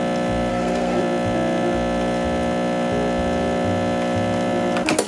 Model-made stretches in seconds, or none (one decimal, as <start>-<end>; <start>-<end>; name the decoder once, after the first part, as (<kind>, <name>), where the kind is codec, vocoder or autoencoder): 0.5-1.0 (codec, SNAC)